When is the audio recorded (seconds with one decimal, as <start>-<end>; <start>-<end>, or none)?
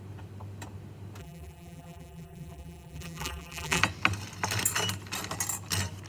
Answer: 0.0-1.2; 3.8-6.1